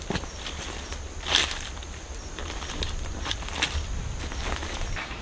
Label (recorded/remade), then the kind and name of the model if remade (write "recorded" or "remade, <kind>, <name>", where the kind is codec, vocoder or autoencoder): recorded